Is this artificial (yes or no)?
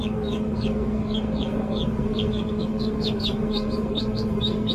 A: yes